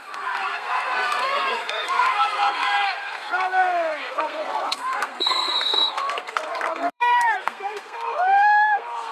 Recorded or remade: remade